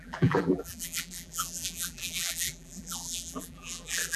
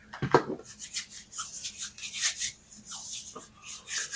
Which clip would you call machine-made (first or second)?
first